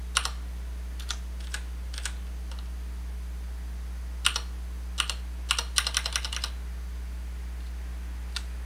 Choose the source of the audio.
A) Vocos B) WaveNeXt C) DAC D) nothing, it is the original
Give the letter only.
D